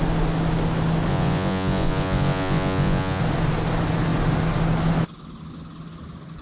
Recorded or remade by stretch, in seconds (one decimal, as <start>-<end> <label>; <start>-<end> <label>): 0.0-1.1 recorded; 1.1-3.2 remade; 3.2-6.4 recorded